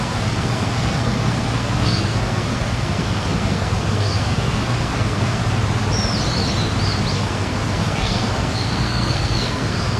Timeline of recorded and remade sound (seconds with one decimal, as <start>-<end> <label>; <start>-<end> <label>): 0.0-5.4 remade; 5.4-7.1 recorded; 7.1-10.0 remade